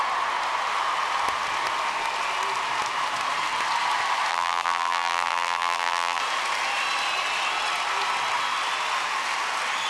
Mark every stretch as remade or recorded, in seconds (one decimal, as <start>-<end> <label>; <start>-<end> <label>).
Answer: 0.0-4.3 recorded; 4.3-6.2 remade; 6.2-9.9 recorded